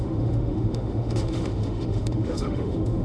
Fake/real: fake